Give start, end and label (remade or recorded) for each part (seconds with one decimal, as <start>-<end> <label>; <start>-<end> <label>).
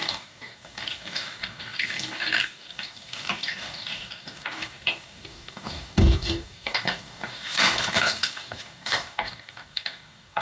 0.0-10.4 remade